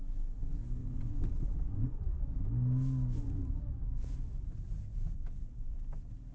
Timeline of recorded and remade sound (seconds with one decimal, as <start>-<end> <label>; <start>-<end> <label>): 0.0-0.8 recorded; 0.8-2.3 remade; 2.3-6.3 recorded